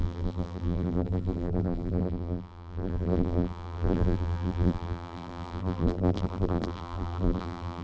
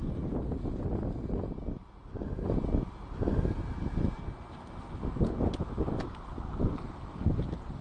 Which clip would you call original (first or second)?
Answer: second